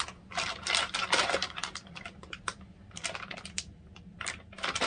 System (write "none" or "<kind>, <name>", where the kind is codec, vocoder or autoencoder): vocoder, BigVGAN v2